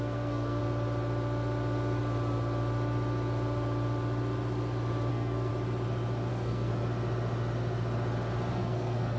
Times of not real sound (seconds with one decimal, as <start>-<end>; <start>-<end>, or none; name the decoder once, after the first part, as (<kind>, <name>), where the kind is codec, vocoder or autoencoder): 0.0-0.6 (codec, SNAC); 5.1-5.5; 6.3-6.7; 8.5-9.2